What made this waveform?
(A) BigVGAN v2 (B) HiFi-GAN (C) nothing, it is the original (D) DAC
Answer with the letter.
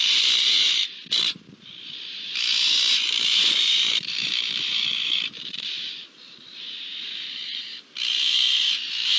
A